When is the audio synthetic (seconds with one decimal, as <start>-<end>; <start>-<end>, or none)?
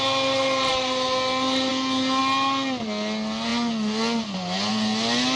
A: none